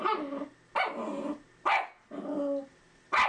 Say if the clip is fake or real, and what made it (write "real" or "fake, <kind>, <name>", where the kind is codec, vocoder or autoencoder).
real